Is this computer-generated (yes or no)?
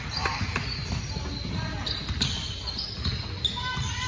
no